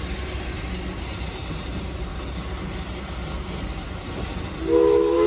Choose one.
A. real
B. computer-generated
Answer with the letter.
A